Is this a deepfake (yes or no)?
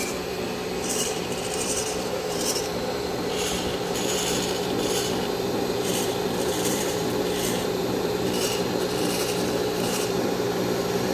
yes